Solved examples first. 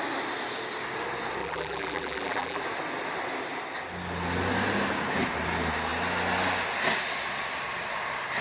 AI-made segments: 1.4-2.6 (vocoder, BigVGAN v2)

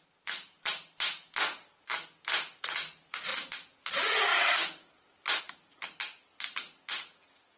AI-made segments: 0.0-4.3 (vocoder, BigVGAN v2); 5.4-7.6

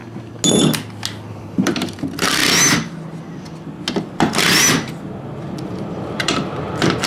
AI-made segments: 1.3-2.4 (vocoder, BigVGAN v2); 5.4-7.1

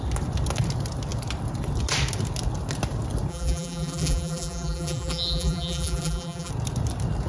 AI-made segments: 3.3-6.5 (vocoder, BigVGAN v2)